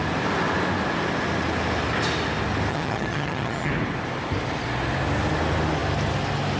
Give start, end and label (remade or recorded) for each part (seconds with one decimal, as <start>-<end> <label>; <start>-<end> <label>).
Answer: 0.0-2.7 recorded; 2.7-3.7 remade; 3.7-6.6 recorded